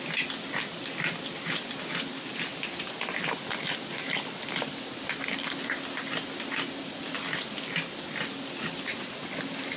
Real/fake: real